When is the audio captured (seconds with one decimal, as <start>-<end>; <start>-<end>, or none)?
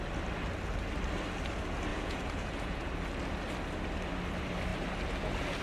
0.0-1.9; 2.9-5.6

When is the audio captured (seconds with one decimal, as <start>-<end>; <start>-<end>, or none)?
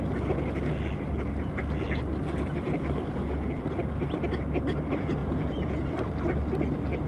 0.0-5.2; 5.9-7.1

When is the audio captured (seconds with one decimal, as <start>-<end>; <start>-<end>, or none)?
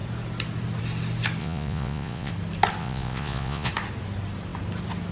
0.0-1.4; 2.3-2.8; 3.7-5.1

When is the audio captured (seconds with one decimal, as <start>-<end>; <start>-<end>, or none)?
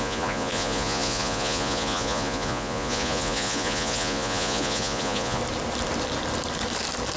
5.4-7.2